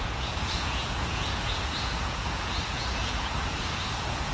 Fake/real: fake